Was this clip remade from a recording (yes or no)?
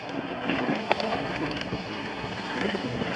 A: yes